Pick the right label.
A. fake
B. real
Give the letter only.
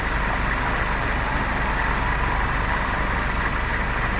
B